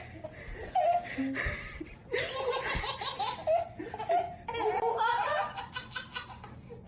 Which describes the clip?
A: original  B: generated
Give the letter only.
A